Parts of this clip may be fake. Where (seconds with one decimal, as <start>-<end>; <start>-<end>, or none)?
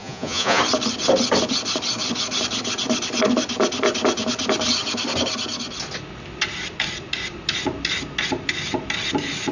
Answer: 0.0-0.6